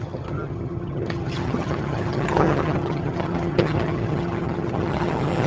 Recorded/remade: remade